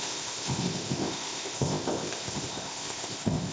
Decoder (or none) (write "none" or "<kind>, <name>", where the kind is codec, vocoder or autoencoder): codec, ZipCodec